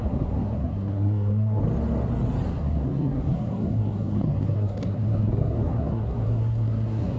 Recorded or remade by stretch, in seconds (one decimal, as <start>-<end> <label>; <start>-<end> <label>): 0.0-1.6 remade; 1.6-2.5 recorded; 2.5-7.2 remade